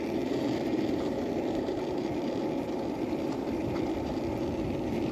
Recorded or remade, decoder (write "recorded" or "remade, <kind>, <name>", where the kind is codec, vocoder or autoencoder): remade, vocoder, BigVGAN v2